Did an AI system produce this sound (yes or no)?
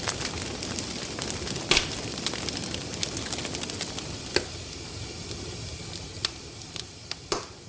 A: no